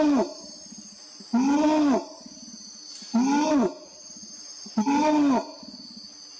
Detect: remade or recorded recorded